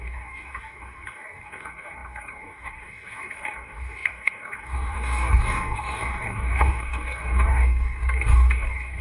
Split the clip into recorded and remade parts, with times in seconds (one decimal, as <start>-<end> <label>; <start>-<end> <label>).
0.0-9.0 remade